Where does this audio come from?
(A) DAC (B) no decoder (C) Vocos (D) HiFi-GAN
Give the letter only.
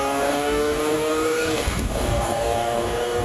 A